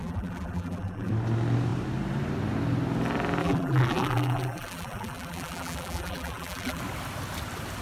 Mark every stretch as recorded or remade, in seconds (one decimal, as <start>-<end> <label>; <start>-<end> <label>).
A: 0.0-1.1 remade; 1.1-3.4 recorded; 3.4-6.8 remade; 6.8-7.8 recorded